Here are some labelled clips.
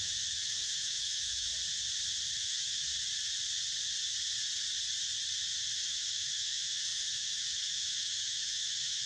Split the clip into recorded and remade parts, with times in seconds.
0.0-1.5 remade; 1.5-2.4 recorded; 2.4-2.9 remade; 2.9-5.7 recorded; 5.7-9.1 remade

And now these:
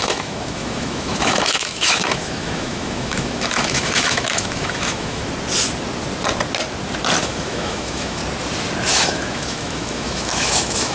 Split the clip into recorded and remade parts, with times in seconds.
0.0-5.2 remade; 5.2-7.2 recorded; 7.2-8.2 remade; 8.2-8.9 recorded; 8.9-10.9 remade

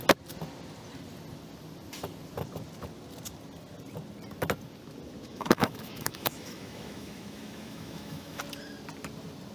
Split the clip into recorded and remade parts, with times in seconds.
0.0-5.3 recorded; 5.3-8.4 remade; 8.4-9.5 recorded

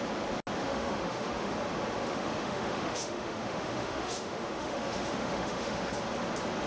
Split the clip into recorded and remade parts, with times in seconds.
0.0-0.6 recorded; 0.6-1.5 remade; 1.5-2.0 recorded; 2.0-6.0 remade; 6.0-6.7 recorded

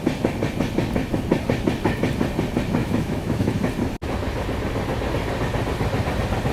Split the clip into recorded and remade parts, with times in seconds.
0.0-2.8 recorded; 2.8-3.5 remade; 3.5-6.5 recorded